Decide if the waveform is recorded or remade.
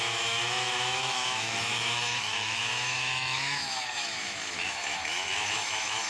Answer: remade